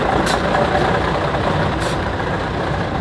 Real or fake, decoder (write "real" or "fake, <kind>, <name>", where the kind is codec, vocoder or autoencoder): fake, vocoder, BigVGAN v2